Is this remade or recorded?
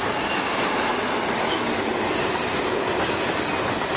recorded